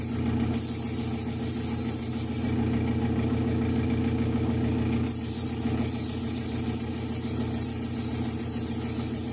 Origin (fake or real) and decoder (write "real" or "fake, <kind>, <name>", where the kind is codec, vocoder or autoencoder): real